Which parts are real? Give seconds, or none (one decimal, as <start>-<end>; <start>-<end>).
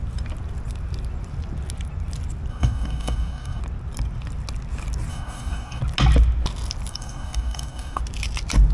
0.0-2.5; 3.6-5.1; 5.8-6.9; 8.0-8.7